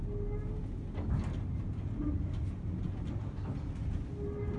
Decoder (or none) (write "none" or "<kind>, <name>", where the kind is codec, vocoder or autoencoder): none